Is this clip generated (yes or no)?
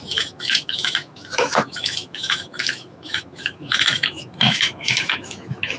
yes